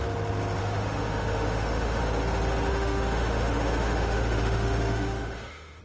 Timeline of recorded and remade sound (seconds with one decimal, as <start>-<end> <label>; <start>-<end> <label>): 0.0-0.6 recorded; 0.6-2.0 remade; 2.0-2.7 recorded; 2.7-5.8 remade